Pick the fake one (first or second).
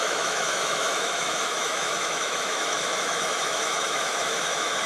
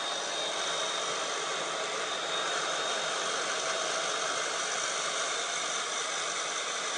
first